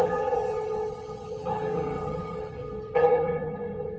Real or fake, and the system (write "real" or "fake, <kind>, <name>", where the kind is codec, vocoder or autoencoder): fake, vocoder, HiFi-GAN